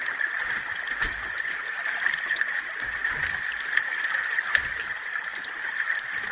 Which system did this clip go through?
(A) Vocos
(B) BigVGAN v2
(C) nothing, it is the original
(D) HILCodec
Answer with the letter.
C